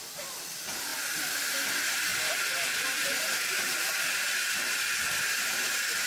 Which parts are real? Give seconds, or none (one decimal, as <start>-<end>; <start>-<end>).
0.9-1.7; 2.1-4.7